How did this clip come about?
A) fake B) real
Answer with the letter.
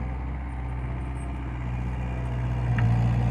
B